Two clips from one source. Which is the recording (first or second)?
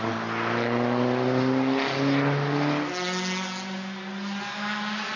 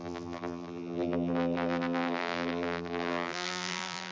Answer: first